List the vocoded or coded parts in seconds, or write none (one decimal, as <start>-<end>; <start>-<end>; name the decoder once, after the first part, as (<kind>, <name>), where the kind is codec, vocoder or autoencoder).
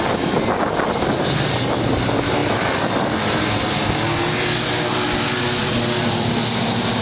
none